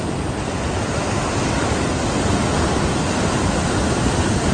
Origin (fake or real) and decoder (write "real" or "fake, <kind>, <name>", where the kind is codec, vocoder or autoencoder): real